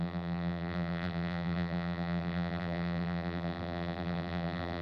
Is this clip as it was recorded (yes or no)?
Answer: no